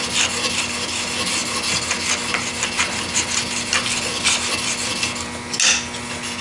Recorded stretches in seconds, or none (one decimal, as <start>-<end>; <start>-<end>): 0.0-6.4